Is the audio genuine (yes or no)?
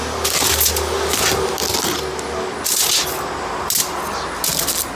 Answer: yes